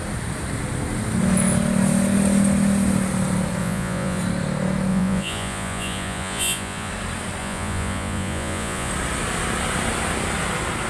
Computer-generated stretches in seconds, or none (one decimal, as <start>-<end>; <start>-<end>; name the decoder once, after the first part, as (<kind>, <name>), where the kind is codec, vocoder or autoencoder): 3.6-4.2 (vocoder, Vocos); 4.9-6.9; 7.4-8.9